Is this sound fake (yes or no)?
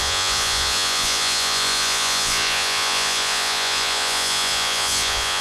yes